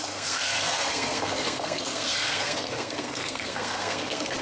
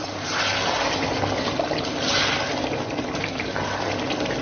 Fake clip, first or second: first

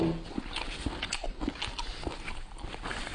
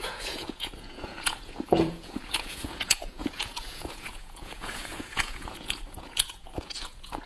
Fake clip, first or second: second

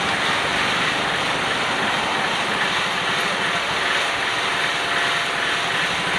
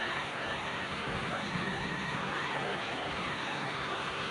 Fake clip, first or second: second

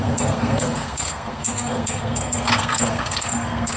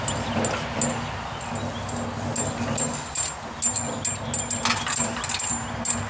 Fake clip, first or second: first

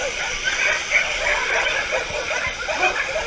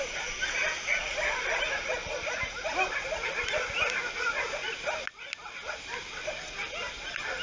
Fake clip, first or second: first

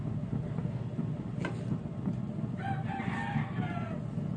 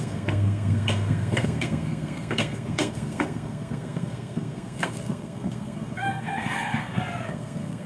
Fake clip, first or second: second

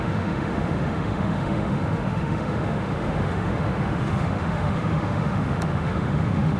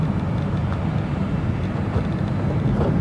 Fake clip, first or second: first